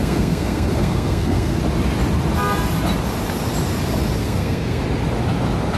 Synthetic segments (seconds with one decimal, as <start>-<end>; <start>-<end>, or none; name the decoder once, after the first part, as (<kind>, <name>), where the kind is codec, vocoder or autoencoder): 0.0-1.6 (codec, SNAC); 4.2-4.8